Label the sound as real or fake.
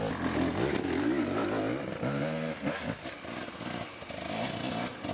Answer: real